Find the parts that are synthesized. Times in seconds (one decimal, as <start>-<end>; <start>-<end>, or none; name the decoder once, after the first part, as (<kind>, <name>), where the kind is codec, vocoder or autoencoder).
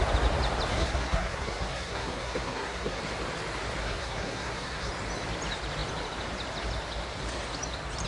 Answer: 0.7-3.0 (codec, SNAC); 3.8-4.9